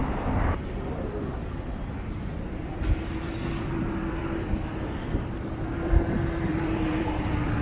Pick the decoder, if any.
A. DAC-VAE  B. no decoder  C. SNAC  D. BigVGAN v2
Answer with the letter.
D